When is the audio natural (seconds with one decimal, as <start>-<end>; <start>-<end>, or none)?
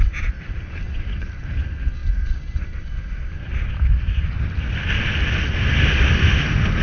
0.0-6.8